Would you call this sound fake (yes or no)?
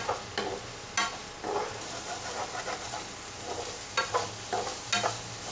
no